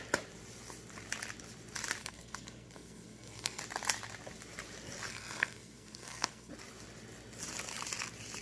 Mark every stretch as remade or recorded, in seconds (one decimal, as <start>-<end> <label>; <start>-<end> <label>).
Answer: 0.0-2.0 recorded; 2.0-3.6 remade; 3.6-5.1 recorded; 5.1-6.5 remade; 6.5-8.4 recorded